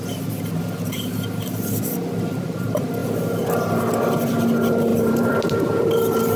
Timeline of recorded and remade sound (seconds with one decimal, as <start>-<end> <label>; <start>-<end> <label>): 0.0-4.9 recorded; 4.9-6.4 remade